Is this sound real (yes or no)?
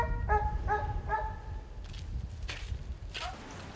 yes